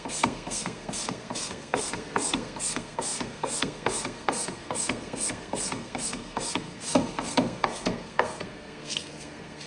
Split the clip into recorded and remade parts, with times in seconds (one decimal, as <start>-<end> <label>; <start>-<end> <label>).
0.0-9.7 remade